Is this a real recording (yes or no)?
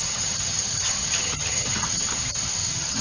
no